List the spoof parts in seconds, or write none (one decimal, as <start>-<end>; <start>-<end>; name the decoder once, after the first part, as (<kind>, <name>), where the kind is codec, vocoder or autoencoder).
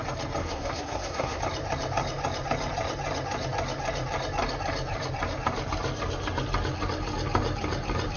0.4-1.4 (codec, SNAC)